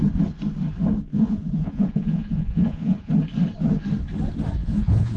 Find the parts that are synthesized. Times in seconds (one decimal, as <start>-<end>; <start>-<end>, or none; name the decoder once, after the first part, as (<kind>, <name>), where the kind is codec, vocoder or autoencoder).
1.1-3.1 (vocoder, Vocos); 4.6-5.2